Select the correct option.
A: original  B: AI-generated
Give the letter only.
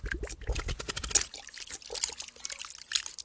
A